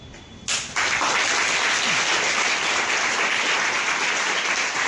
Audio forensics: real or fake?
real